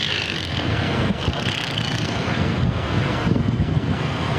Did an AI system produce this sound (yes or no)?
yes